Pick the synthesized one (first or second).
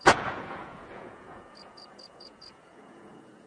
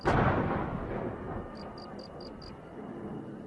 first